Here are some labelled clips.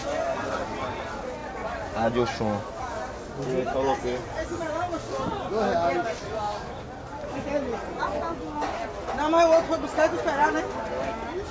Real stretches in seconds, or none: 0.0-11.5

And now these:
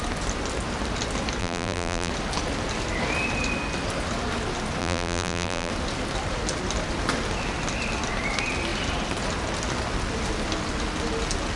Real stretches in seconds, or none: 0.0-1.4; 2.1-4.8; 5.7-11.6